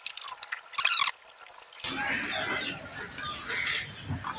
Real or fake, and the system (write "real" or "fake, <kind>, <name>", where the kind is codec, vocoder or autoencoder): real